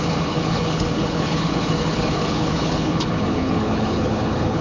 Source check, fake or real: fake